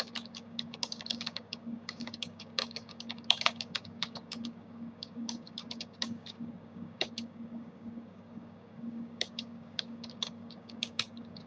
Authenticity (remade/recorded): remade